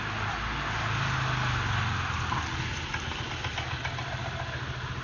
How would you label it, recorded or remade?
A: recorded